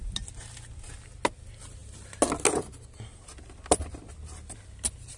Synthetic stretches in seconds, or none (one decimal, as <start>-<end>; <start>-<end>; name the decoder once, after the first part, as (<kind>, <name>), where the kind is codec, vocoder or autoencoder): none